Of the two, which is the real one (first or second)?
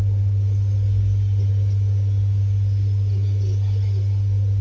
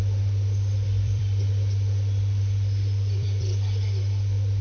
first